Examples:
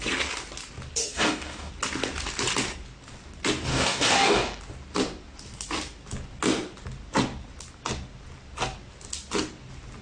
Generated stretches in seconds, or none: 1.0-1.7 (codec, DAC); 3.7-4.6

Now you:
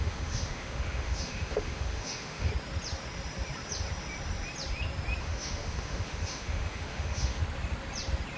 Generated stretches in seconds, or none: 0.0-2.5 (autoencoder, DAC-VAE); 5.2-7.4

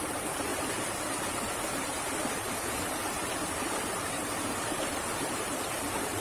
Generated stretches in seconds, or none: 0.0-0.5 (vocoder, BigVGAN v2); 1.3-6.2

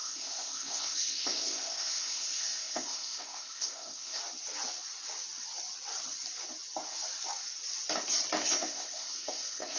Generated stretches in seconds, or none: 0.0-4.2 (codec, ZipCodec); 8.5-9.8

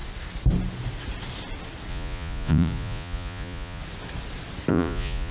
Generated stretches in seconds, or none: 1.9-3.8 (vocoder, Vocos); 4.7-5.3

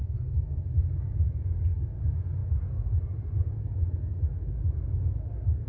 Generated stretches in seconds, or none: 0.0-0.6 (codec, DAC)